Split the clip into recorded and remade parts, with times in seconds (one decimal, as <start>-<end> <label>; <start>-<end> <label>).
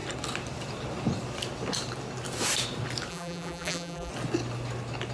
0.0-3.1 recorded; 3.1-4.1 remade; 4.1-5.1 recorded